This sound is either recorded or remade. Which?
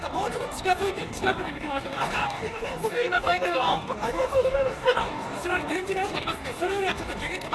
remade